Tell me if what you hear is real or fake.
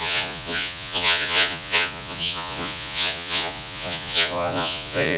fake